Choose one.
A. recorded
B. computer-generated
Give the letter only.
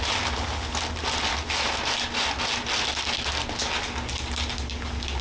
A